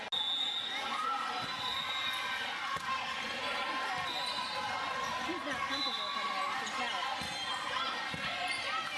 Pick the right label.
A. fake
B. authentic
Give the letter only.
B